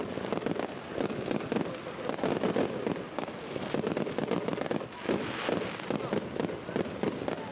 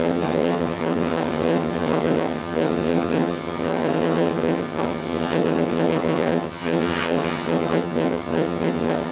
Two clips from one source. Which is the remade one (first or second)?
second